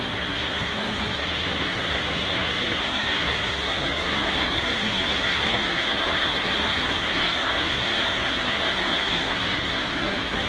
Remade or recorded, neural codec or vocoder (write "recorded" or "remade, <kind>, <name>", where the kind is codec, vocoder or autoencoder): remade, codec, SNAC